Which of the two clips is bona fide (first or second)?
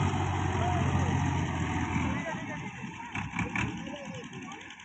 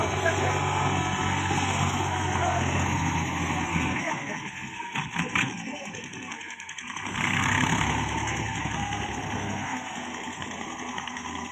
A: first